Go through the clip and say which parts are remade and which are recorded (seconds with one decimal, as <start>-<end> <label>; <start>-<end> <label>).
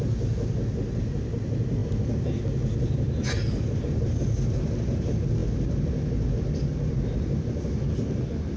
0.0-8.6 recorded